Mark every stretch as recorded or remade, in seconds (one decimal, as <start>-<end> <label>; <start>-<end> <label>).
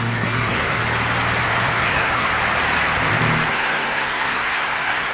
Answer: 0.0-0.8 remade; 0.8-1.4 recorded; 1.4-2.3 remade; 2.3-3.5 recorded; 3.5-5.1 remade